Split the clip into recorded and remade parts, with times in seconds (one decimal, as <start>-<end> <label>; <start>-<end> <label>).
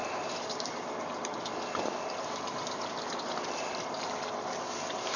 0.0-5.2 recorded